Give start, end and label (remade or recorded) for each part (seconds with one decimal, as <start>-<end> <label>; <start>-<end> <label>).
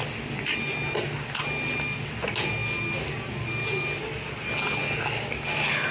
0.0-5.9 recorded